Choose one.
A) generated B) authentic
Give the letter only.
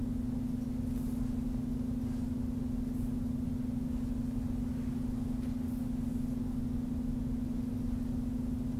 B